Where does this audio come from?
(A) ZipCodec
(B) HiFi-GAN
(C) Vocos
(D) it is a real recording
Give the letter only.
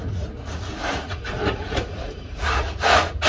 C